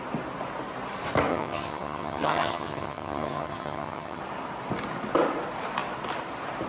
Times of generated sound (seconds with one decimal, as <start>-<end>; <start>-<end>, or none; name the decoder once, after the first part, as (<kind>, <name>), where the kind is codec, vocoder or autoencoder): 1.3-4.2 (vocoder, HiFi-GAN)